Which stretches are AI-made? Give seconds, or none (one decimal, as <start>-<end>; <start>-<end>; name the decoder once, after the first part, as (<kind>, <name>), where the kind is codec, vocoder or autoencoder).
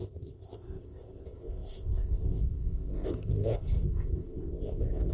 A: 0.0-5.1 (codec, ZipCodec)